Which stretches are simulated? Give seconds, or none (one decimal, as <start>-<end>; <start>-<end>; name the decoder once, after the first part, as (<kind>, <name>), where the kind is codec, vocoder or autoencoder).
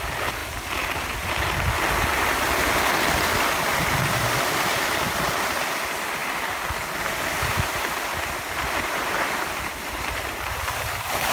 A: 0.0-0.4 (vocoder, BigVGAN v2); 1.0-6.2; 6.9-11.3